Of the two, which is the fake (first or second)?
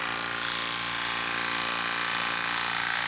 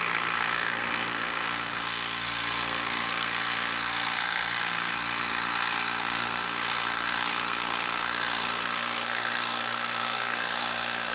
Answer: second